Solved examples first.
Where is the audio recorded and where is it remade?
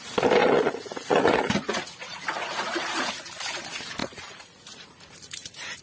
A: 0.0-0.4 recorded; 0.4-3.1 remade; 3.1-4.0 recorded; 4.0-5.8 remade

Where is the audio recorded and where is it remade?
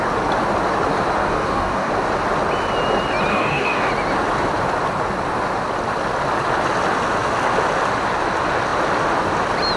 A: 0.0-1.2 recorded; 1.2-1.9 remade; 1.9-3.3 recorded; 3.3-3.9 remade; 3.9-9.8 recorded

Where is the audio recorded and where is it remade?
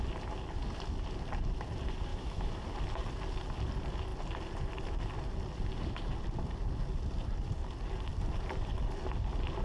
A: 0.0-2.1 recorded; 2.1-2.6 remade; 2.6-9.6 recorded